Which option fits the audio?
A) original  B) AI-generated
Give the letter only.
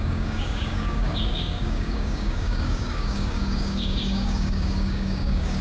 B